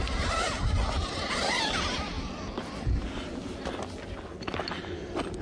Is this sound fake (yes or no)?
no